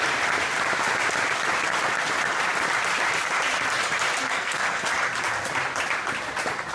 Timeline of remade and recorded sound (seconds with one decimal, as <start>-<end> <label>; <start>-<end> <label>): 0.0-4.2 recorded; 4.2-4.9 remade; 4.9-6.7 recorded